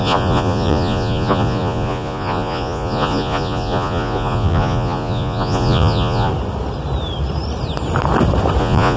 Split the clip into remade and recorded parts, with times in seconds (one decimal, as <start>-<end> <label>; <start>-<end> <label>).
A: 0.0-6.3 remade; 6.3-8.6 recorded; 8.6-9.0 remade